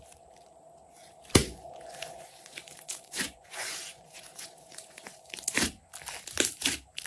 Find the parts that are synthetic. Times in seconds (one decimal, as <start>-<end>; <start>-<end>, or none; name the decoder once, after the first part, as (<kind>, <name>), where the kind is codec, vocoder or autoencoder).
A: 1.4-5.4 (vocoder, Vocos)